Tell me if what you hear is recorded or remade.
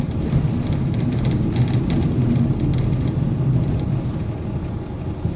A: recorded